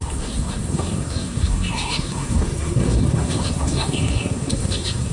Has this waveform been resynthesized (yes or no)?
yes